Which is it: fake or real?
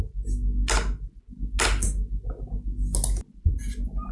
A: real